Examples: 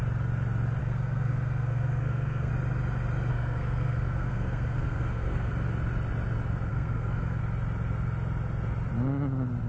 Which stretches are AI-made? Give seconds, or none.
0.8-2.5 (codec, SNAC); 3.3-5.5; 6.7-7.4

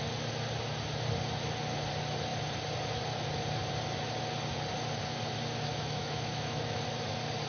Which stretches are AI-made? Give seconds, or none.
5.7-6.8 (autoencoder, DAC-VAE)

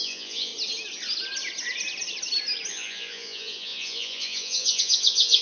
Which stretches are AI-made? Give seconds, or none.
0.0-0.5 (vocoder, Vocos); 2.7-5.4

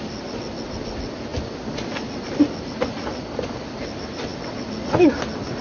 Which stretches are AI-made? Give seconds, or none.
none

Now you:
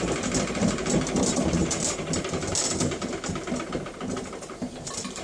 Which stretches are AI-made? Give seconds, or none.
none

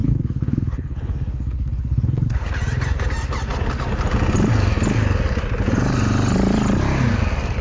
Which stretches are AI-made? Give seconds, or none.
0.0-2.5 (codec, HILCodec)

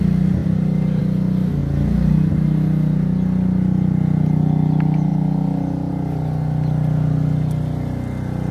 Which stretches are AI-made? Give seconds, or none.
none

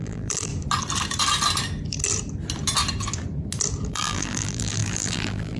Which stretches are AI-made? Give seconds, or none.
0.0-0.5 (vocoder, BigVGAN v2); 3.9-5.6